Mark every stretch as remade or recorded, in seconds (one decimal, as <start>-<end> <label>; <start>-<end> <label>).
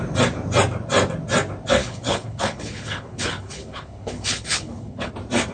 0.0-1.8 recorded; 1.8-5.1 remade; 5.1-5.5 recorded